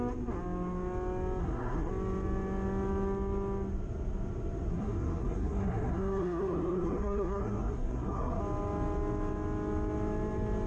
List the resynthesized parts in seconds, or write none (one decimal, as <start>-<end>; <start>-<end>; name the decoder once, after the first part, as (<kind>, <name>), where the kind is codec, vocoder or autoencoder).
1.4-1.9 (codec, SNAC); 4.7-8.4